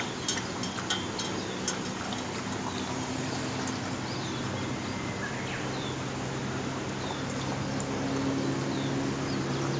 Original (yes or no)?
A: yes